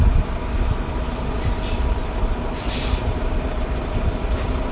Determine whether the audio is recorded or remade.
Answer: recorded